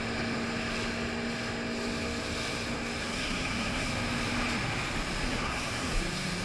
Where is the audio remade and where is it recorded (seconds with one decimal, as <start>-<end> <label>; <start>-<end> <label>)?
0.0-3.0 recorded; 3.0-3.9 remade; 3.9-5.3 recorded; 5.3-6.0 remade; 6.0-6.4 recorded